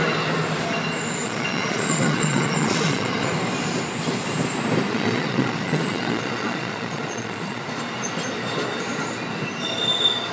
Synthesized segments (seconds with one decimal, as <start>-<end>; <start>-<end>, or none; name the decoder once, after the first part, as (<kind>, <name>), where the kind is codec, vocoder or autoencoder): 1.2-3.3 (vocoder, Vocos); 4.9-7.6